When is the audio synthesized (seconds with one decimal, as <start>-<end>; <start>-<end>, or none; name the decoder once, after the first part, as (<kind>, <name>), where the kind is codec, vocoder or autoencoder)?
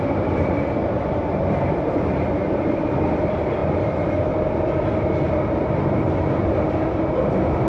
0.0-0.8 (vocoder, BigVGAN v2); 1.8-7.7